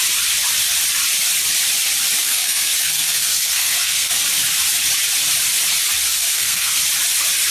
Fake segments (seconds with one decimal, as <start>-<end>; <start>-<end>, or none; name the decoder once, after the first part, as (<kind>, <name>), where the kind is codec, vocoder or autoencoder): 2.2-4.1 (codec, SNAC); 6.1-6.8